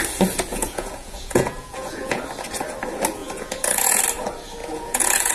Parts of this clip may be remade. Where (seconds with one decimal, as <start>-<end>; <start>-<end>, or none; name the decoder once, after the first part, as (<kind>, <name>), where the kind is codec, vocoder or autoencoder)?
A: 0.5-2.2 (vocoder, Vocos); 3.2-4.0; 4.6-5.3